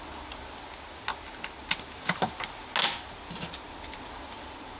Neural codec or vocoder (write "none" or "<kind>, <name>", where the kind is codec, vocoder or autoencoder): none